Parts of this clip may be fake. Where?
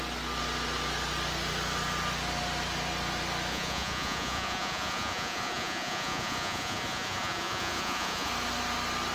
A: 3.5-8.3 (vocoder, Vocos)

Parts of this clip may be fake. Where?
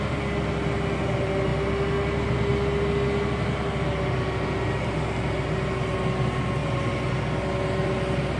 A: none